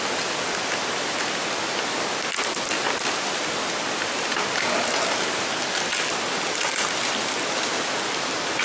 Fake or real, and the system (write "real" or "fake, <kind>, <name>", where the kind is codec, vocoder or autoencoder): real